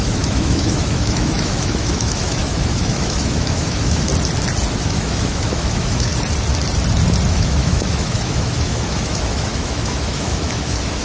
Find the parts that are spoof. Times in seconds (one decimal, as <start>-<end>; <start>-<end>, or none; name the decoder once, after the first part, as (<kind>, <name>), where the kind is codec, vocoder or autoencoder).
0.0-4.1 (autoencoder, DAC-VAE); 4.8-6.1; 7.3-11.0